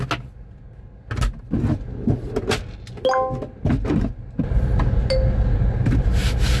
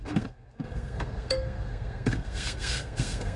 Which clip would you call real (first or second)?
first